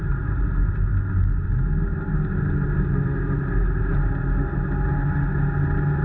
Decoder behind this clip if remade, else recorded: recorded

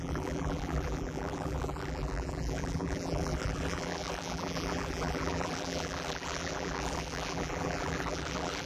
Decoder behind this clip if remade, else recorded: remade, vocoder, BigVGAN v2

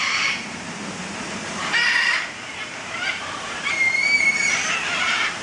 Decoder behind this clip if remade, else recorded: remade, vocoder, BigVGAN v2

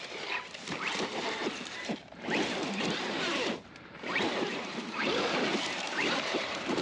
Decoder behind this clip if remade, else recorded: remade, vocoder, BigVGAN v2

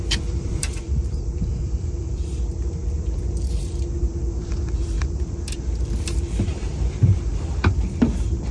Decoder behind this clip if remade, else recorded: remade, vocoder, BigVGAN v2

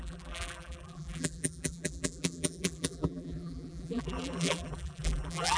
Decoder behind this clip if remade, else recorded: remade, vocoder, BigVGAN v2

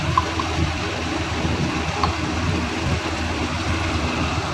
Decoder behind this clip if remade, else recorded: remade, vocoder, BigVGAN v2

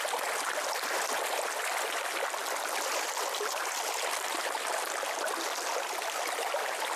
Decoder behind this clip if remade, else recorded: recorded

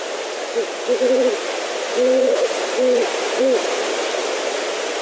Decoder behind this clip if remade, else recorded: remade, vocoder, BigVGAN v2